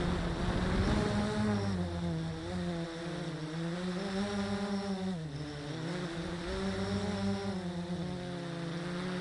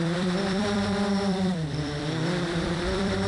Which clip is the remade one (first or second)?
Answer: second